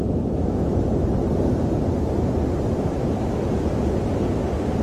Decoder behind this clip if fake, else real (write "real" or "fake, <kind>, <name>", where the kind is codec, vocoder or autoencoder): real